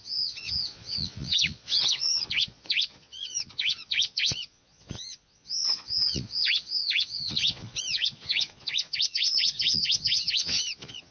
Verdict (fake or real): fake